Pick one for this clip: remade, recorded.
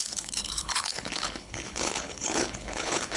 remade